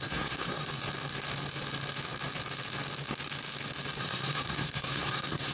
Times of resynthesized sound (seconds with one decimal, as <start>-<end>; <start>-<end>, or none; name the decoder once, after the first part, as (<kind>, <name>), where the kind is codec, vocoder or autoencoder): 0.0-0.7 (codec, SNAC); 4.0-5.5